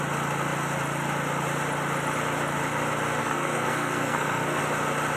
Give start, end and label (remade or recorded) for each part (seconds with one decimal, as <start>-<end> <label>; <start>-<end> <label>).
0.0-3.2 recorded; 3.2-4.6 remade; 4.6-5.2 recorded

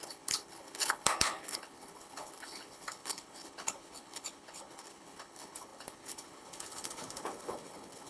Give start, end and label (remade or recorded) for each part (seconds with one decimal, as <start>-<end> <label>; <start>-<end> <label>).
0.0-8.1 remade

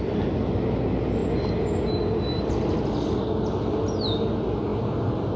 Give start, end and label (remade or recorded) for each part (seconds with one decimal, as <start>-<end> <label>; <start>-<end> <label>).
0.0-5.4 recorded

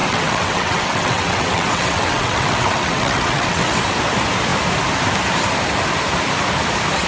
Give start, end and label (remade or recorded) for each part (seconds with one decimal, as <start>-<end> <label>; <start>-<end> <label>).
0.0-3.8 remade; 3.8-7.1 recorded

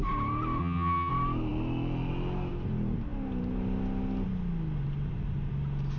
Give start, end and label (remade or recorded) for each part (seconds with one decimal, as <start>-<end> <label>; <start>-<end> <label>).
0.0-0.6 recorded; 0.6-1.1 remade; 1.1-6.0 recorded

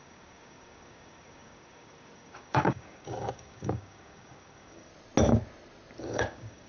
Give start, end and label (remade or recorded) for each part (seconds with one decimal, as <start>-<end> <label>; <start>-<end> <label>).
0.0-4.9 remade; 4.9-6.0 recorded; 6.0-6.7 remade

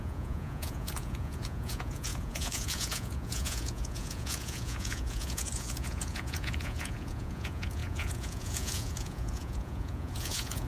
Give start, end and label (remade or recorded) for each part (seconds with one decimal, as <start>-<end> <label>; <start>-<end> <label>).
0.0-10.7 remade

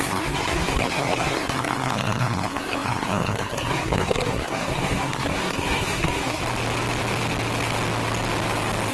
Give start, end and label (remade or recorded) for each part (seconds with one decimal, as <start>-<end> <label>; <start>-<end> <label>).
0.0-6.4 remade; 6.4-8.9 recorded